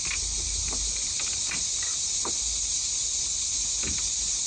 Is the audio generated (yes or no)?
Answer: no